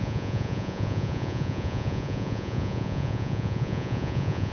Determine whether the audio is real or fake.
fake